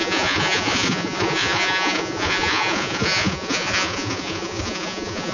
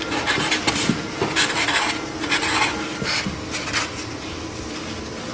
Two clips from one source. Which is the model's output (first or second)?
first